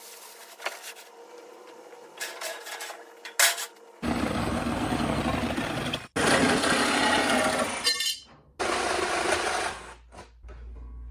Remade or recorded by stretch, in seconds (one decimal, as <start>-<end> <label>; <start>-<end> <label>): 0.0-4.4 recorded; 4.4-5.2 remade; 5.2-11.1 recorded